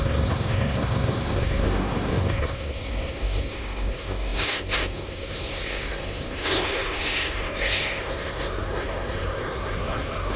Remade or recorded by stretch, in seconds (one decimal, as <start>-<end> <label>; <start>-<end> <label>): 0.0-10.4 remade